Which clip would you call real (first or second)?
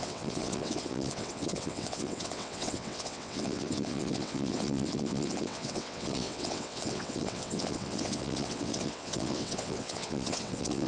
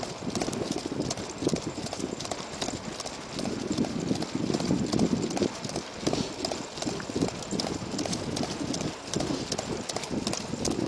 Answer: second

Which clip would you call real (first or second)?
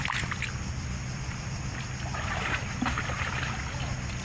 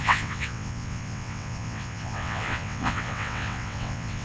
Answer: first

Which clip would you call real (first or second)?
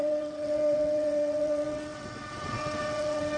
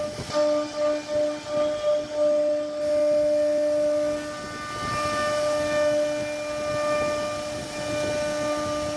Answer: second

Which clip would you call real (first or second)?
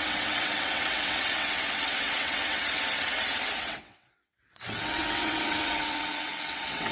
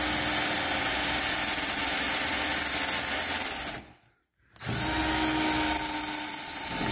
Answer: second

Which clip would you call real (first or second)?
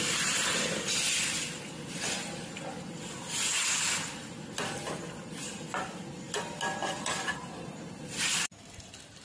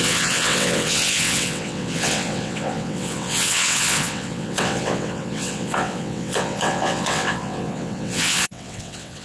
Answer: first